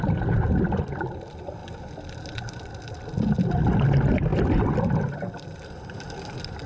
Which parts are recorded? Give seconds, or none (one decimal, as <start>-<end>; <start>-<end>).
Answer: 0.0-6.7